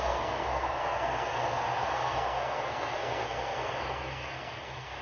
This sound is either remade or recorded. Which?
remade